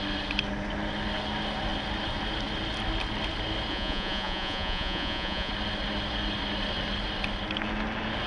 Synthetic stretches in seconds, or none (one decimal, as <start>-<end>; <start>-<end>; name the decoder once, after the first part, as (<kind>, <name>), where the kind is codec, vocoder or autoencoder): 3.7-5.5 (vocoder, Vocos)